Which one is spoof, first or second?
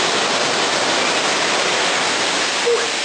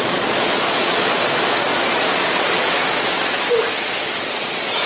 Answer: second